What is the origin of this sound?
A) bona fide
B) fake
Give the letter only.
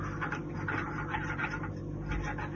A